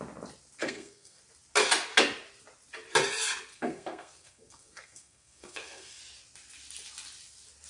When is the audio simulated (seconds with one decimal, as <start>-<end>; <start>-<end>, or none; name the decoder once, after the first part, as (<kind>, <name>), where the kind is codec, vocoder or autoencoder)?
0.6-1.2 (codec, SNAC); 3.5-6.0